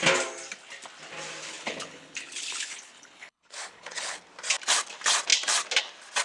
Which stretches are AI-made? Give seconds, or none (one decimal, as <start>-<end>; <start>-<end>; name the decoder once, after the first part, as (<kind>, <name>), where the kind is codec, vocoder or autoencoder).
1.4-4.2 (codec, HILCodec)